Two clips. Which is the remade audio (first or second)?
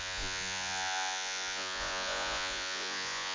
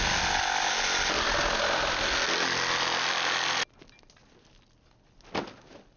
first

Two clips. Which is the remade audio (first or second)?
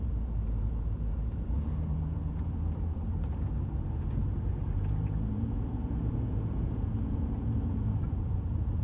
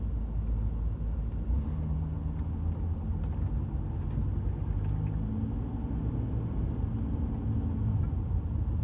first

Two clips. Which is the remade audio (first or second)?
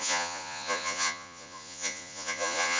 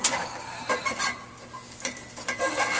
first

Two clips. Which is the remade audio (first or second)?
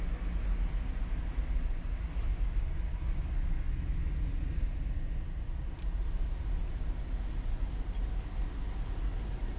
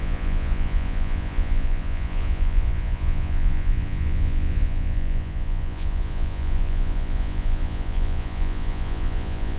second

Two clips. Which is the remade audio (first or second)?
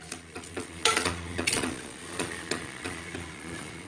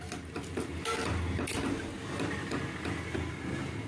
first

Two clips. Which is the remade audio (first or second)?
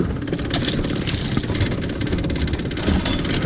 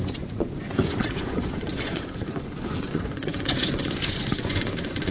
second